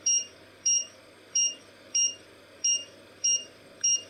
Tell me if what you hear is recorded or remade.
remade